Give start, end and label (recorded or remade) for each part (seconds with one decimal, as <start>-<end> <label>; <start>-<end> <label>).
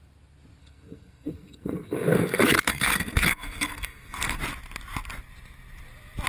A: 0.0-0.6 recorded; 0.6-4.4 remade; 4.4-6.3 recorded